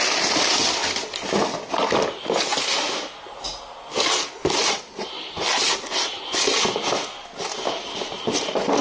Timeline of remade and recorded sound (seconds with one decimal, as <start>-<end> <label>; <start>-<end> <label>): 0.0-8.8 recorded